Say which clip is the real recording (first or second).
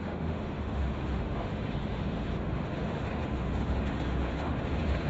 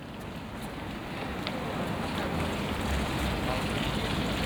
second